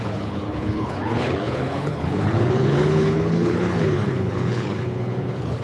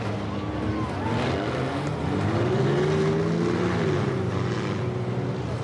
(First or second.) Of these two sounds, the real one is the second